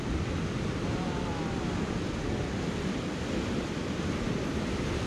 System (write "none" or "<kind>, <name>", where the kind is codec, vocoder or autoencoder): none